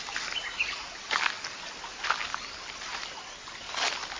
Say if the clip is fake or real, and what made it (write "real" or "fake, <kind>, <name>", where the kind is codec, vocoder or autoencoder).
real